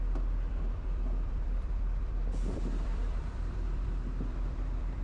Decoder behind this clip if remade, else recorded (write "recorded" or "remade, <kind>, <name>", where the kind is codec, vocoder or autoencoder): remade, vocoder, BigVGAN v2